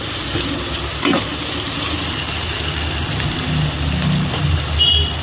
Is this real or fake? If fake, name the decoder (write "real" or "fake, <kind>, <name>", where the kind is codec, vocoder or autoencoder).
real